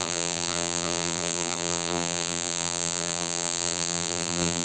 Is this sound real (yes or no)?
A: no